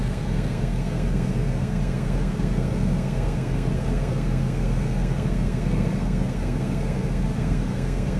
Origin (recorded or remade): remade